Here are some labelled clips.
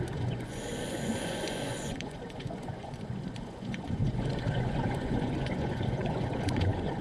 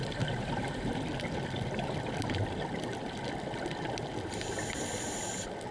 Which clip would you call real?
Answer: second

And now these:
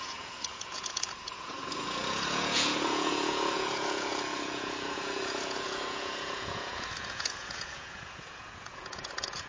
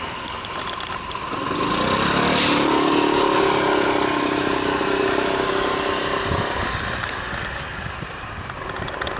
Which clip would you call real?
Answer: second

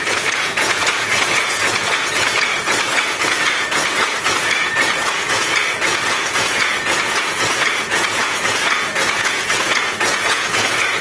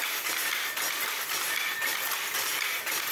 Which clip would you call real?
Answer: second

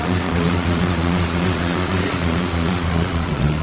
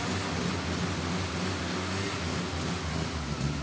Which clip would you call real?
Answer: second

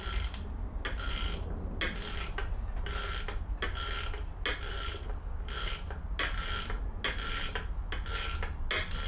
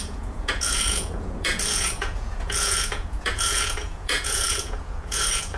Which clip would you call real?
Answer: first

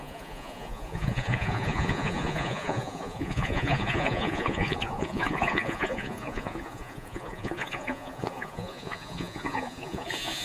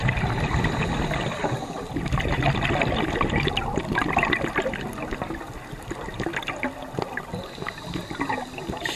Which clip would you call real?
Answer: second